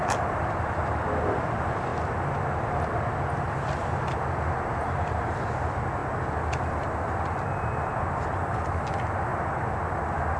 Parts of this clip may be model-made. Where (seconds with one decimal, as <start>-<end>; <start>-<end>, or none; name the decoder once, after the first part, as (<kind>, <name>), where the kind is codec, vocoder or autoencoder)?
0.0-1.9 (vocoder, BigVGAN v2); 4.9-6.0; 8.1-9.3; 9.9-10.4